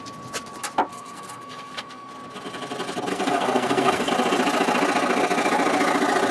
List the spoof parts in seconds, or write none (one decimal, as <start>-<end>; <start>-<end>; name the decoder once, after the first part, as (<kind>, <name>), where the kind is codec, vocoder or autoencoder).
0.9-2.1 (codec, SNAC); 3.1-4.1

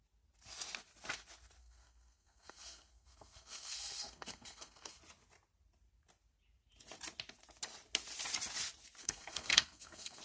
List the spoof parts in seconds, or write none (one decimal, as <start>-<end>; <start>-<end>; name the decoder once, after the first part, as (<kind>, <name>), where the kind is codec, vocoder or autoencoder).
1.6-5.0 (codec, SNAC); 9.0-10.2

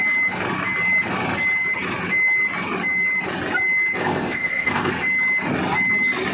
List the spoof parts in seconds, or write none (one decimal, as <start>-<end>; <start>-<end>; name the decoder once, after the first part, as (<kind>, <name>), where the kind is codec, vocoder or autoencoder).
4.0-4.9 (codec, ZipCodec)